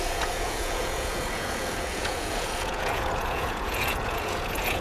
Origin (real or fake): fake